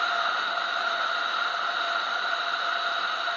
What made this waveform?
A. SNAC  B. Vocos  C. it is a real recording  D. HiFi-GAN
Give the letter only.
C